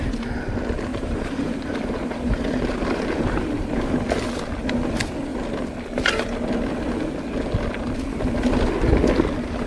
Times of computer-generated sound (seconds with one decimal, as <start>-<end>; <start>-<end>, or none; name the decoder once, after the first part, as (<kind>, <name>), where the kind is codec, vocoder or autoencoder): 0.9-3.9 (vocoder, BigVGAN v2)